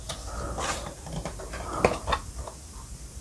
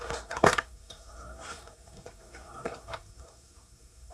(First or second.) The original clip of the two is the first